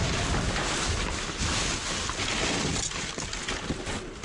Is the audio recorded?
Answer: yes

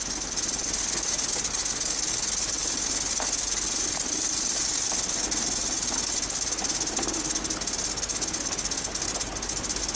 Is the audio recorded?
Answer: yes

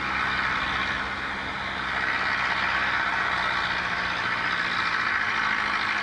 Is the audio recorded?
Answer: yes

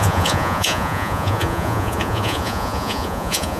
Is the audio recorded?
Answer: no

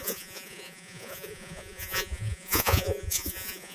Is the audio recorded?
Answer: no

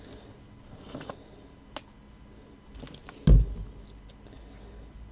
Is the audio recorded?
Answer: yes